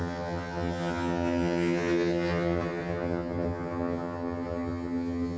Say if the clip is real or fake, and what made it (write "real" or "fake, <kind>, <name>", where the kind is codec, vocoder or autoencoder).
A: fake, vocoder, HiFi-GAN